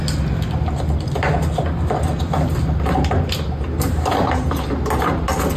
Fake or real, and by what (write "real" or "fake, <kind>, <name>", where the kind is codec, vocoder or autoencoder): real